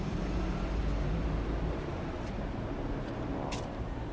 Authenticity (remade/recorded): remade